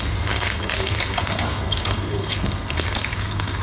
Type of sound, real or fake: fake